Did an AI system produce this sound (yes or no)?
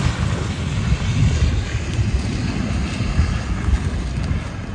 no